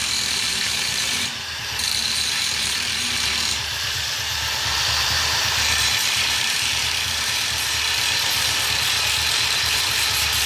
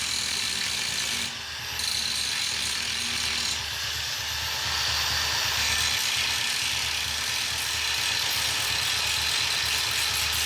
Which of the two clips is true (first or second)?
second